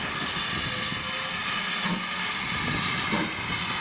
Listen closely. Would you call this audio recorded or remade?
recorded